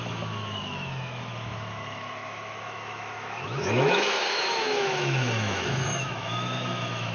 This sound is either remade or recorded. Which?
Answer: remade